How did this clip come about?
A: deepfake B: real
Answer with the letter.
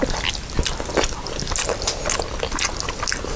B